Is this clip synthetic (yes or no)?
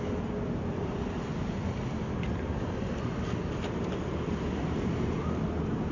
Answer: no